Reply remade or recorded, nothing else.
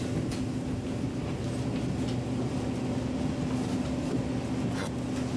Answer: recorded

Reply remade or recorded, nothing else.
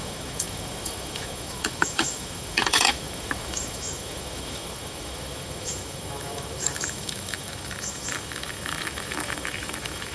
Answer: remade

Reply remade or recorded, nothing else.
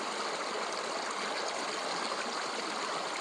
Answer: recorded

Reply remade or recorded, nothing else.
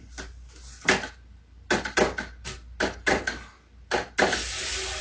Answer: recorded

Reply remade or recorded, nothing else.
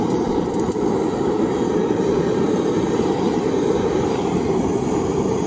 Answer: remade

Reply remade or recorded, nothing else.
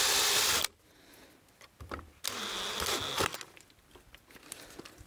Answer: recorded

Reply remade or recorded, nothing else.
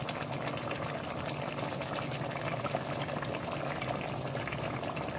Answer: recorded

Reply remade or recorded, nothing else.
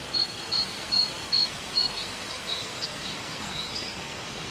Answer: remade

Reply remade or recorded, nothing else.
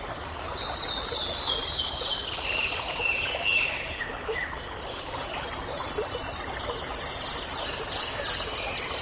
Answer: recorded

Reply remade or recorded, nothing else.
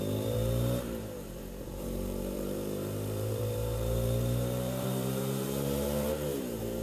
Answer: remade